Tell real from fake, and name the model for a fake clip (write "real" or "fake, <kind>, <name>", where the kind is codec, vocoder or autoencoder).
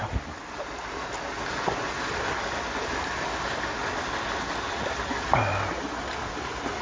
real